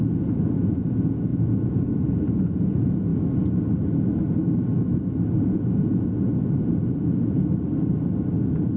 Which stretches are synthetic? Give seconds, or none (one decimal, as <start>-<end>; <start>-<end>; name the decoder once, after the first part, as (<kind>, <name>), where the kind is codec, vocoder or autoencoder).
0.0-3.1 (vocoder, Vocos); 4.8-7.4; 8.4-8.8